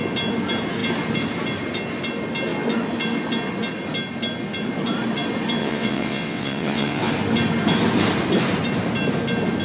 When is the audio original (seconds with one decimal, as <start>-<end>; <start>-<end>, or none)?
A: 0.0-5.6; 7.1-9.6